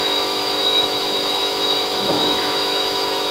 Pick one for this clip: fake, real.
fake